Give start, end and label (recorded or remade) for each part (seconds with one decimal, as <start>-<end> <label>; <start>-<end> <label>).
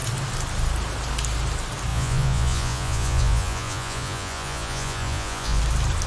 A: 0.0-1.9 recorded; 1.9-5.6 remade; 5.6-6.1 recorded